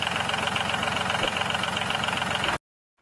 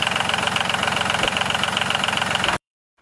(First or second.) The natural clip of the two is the first